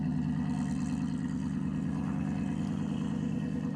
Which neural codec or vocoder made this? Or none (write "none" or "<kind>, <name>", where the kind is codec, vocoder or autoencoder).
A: none